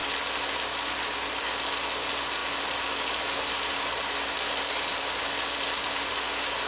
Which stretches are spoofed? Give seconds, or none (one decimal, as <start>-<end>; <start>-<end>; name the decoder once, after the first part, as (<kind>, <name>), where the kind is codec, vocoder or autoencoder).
none